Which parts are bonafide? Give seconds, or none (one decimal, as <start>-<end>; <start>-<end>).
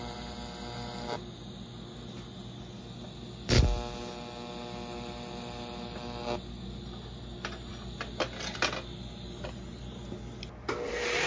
0.0-11.3